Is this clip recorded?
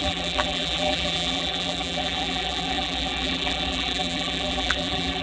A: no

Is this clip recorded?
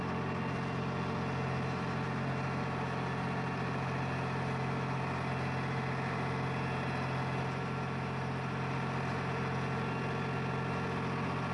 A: yes